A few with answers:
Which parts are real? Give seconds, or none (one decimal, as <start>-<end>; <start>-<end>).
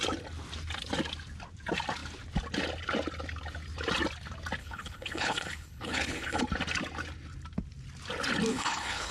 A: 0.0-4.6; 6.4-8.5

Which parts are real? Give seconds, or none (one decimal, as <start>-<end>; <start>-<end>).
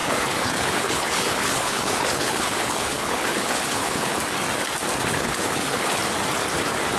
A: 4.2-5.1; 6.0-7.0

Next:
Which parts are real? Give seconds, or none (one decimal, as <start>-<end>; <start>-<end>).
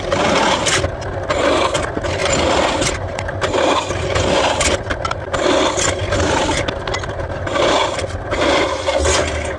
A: 0.0-9.6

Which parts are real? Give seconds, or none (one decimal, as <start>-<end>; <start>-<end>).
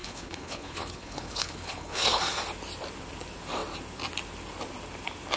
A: 2.2-5.4